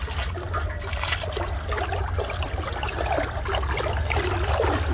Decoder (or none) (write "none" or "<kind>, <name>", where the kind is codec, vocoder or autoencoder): none